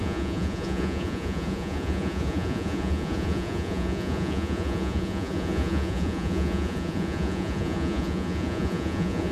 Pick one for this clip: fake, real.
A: fake